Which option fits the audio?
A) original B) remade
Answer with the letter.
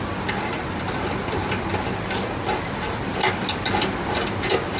A